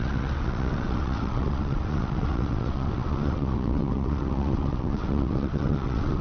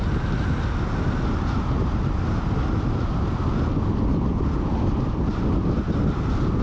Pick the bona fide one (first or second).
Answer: second